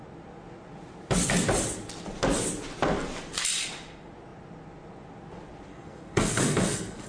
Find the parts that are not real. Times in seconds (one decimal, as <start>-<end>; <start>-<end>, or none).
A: 5.7-7.1